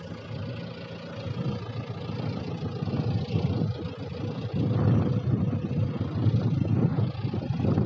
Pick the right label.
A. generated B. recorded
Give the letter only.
B